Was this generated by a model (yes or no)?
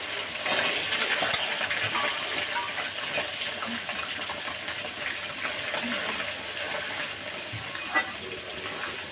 no